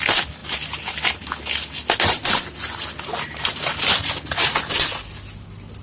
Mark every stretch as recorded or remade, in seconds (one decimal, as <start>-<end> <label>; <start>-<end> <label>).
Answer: 0.0-5.8 recorded